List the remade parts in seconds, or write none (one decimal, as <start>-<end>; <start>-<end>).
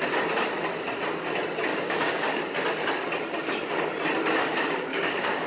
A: 1.7-2.4; 4.9-5.5